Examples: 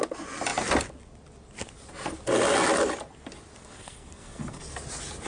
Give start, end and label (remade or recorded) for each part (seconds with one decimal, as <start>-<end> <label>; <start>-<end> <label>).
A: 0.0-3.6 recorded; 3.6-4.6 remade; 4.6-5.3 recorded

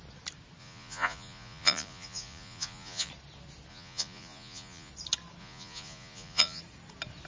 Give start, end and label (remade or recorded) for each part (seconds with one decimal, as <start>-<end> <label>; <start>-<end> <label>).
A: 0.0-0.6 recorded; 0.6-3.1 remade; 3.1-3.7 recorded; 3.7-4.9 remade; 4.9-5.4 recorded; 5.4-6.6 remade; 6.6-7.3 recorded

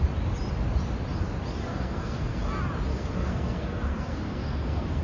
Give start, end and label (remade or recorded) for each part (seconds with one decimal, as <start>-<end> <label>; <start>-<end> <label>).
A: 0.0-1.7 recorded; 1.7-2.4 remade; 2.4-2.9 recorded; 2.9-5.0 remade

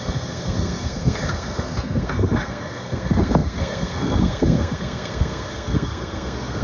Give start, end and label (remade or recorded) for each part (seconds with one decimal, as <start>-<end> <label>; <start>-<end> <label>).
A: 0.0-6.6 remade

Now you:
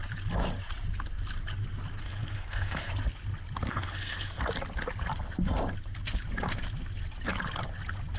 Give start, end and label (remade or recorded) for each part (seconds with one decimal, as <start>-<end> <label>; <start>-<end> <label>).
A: 0.0-2.0 recorded; 2.0-2.9 remade; 2.9-3.7 recorded; 3.7-4.4 remade; 4.4-8.2 recorded

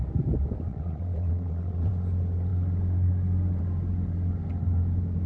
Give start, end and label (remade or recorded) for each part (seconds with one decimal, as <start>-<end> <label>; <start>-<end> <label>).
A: 0.0-0.7 recorded; 0.7-1.9 remade; 1.9-5.3 recorded